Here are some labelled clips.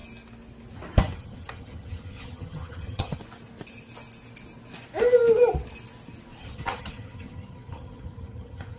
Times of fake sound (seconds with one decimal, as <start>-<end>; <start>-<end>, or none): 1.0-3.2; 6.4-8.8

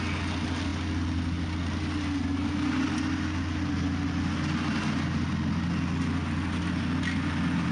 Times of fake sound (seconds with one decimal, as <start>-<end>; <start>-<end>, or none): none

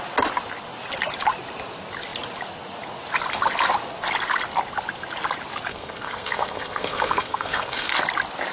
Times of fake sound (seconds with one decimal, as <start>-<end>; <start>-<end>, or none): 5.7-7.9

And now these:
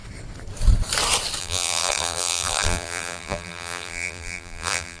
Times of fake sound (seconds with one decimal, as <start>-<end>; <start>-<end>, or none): 1.4-5.0

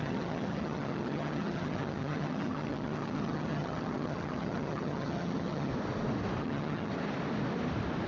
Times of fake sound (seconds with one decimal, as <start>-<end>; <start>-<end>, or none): 0.0-5.7; 6.4-6.9

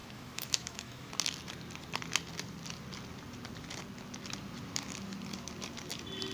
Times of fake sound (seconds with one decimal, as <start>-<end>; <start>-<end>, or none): 0.0-1.1

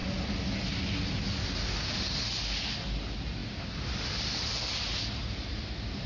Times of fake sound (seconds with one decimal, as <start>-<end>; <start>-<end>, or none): 3.4-4.5